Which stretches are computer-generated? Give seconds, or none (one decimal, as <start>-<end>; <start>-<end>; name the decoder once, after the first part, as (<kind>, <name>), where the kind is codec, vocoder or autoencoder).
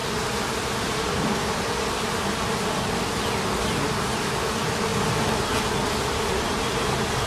0.0-2.4 (vocoder, BigVGAN v2); 4.9-5.6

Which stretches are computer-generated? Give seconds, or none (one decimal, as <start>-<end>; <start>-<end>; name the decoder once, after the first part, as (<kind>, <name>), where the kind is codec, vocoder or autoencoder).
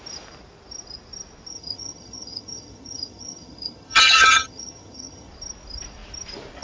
1.5-5.3 (vocoder, HiFi-GAN)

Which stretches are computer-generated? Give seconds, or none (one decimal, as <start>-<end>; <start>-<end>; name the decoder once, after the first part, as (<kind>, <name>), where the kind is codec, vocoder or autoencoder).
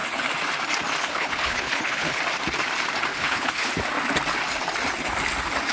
1.0-2.2 (codec, HILCodec); 3.1-3.7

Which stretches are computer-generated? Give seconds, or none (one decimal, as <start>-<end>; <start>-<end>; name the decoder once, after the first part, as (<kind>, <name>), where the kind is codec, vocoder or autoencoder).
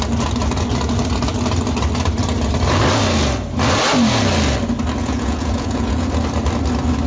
5.0-6.1 (vocoder, Vocos)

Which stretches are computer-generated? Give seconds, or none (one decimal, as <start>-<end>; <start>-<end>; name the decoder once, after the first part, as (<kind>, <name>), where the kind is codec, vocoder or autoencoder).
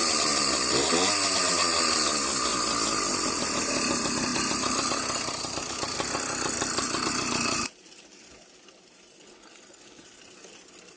none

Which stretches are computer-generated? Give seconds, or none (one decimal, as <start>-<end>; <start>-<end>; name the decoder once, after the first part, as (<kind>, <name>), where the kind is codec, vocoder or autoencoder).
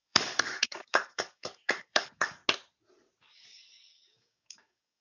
0.0-2.4 (codec, DAC); 3.2-5.0